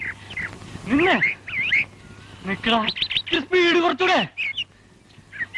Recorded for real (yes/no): yes